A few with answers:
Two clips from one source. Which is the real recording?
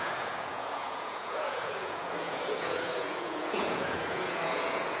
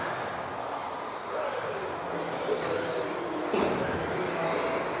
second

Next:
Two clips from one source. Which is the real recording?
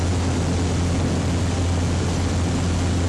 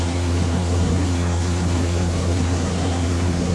first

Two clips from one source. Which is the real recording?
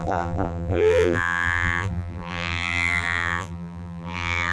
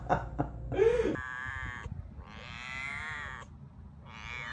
second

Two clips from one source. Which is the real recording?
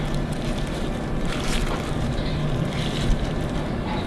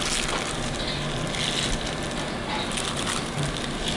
second